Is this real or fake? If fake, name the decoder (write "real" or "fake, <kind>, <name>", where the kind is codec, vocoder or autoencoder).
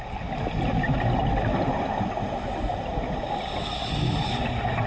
real